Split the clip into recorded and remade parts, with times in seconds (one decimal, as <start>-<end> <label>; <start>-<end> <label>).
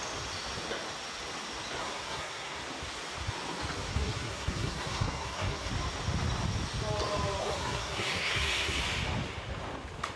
0.0-1.8 recorded; 1.8-2.6 remade; 2.6-3.9 recorded; 3.9-5.7 remade; 5.7-7.4 recorded; 7.4-8.8 remade; 8.8-10.2 recorded